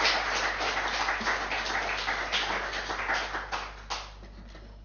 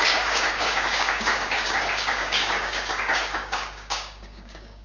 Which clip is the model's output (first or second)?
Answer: second